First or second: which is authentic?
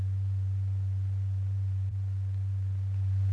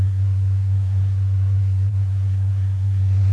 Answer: first